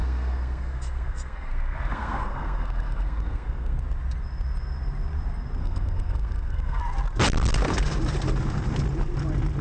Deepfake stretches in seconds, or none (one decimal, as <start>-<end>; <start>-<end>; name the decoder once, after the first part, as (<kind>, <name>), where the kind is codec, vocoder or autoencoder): 0.0-3.8 (codec, SNAC); 5.6-6.8